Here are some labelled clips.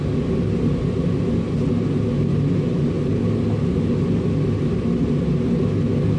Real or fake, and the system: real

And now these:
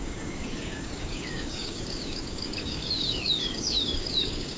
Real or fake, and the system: fake, codec, DAC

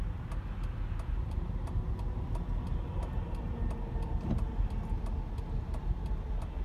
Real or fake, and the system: real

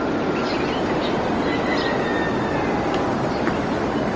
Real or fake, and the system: real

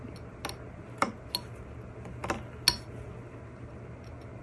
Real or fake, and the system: real